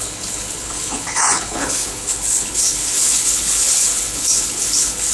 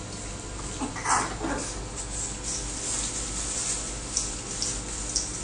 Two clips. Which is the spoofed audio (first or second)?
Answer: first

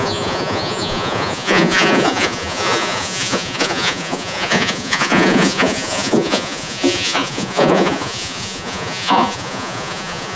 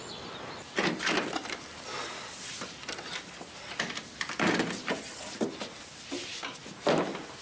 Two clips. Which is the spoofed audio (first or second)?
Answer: first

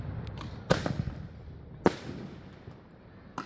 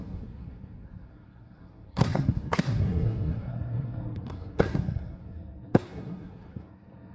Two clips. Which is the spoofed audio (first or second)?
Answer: second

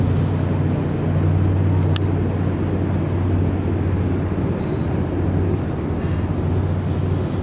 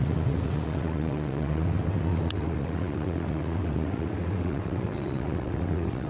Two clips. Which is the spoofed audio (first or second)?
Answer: second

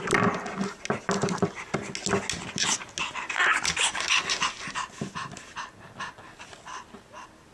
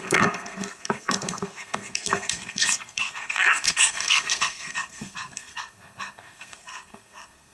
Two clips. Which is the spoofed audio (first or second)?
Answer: second